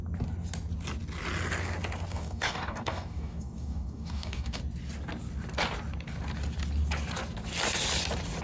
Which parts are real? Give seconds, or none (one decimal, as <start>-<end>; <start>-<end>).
0.0-2.1; 4.6-8.4